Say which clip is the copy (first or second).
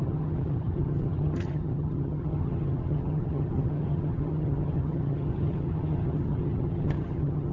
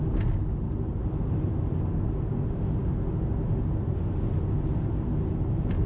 first